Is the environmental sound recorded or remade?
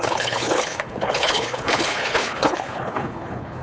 remade